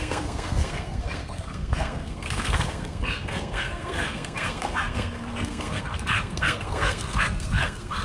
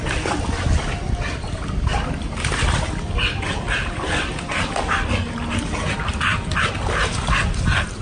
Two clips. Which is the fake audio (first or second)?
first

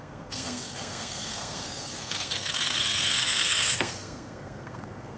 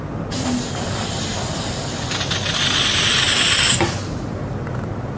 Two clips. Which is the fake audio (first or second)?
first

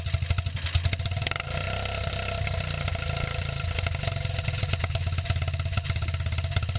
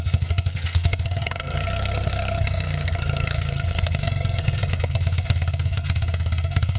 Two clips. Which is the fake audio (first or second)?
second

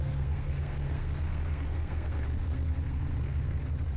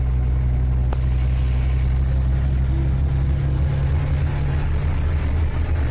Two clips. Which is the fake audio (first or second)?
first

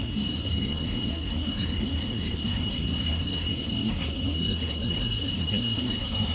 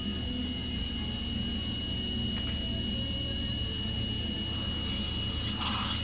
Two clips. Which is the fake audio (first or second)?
first